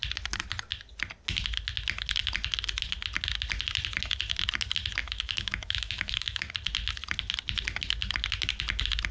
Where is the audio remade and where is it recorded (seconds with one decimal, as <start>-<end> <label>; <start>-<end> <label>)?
0.0-5.0 recorded; 5.0-6.5 remade; 6.5-9.1 recorded